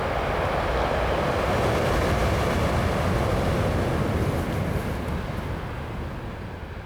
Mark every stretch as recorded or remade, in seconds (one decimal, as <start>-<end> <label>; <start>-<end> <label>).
0.0-6.9 recorded